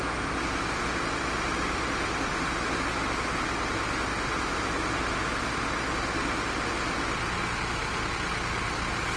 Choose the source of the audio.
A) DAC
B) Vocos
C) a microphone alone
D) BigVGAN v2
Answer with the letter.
C